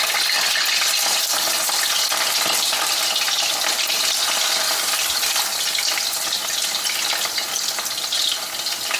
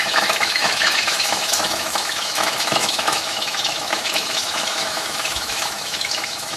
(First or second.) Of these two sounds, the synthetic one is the second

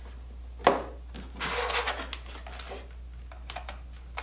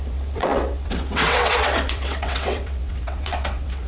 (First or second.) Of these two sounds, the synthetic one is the second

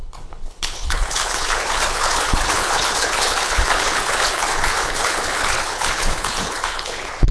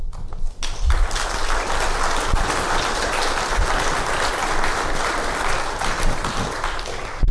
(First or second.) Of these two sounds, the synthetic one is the first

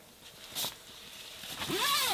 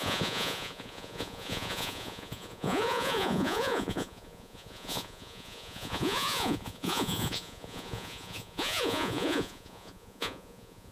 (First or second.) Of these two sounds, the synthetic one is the second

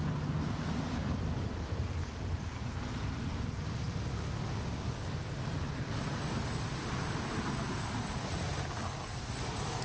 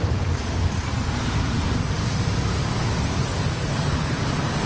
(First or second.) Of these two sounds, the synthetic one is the second